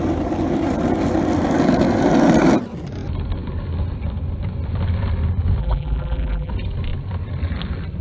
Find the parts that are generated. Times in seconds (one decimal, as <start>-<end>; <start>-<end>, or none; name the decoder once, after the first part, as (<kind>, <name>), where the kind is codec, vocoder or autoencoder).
5.6-6.5 (vocoder, BigVGAN v2)